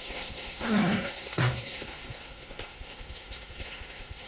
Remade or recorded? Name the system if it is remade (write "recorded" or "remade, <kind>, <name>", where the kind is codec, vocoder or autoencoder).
remade, codec, SNAC